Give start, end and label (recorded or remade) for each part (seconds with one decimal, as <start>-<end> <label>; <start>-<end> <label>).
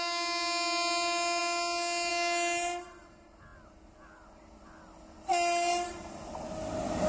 0.0-7.1 recorded